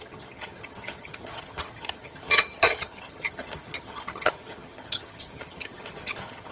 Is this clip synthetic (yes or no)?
yes